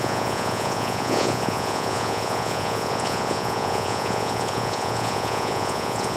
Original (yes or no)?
no